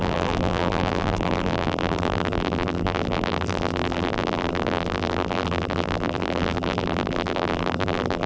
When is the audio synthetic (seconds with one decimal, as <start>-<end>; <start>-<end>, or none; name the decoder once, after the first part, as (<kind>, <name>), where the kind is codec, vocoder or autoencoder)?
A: 0.0-8.3 (vocoder, BigVGAN v2)